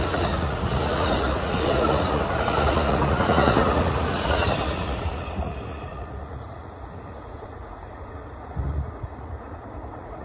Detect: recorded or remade remade